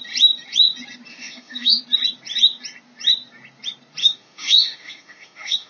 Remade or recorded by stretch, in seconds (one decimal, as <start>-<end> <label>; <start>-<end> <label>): 0.0-1.1 recorded; 1.1-1.8 remade; 1.8-4.0 recorded; 4.0-5.7 remade